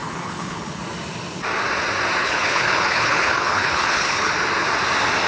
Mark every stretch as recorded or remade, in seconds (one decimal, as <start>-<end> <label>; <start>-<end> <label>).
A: 0.0-0.8 remade; 0.8-2.2 recorded; 2.2-4.3 remade; 4.3-5.3 recorded